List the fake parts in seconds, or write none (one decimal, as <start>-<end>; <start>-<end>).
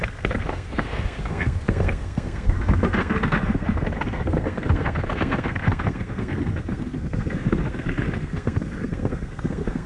0.0-9.9